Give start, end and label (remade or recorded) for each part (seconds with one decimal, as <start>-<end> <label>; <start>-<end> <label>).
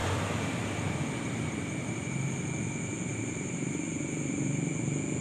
0.0-3.1 recorded; 3.1-3.7 remade; 3.7-5.2 recorded